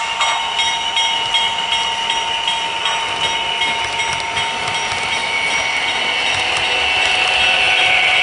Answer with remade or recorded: recorded